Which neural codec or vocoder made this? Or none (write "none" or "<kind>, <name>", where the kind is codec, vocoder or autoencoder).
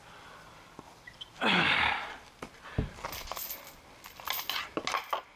none